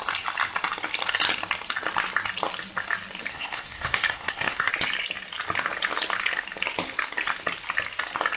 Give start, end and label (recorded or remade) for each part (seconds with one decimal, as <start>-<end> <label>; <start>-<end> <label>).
0.0-3.3 recorded; 3.3-4.7 remade; 4.7-8.4 recorded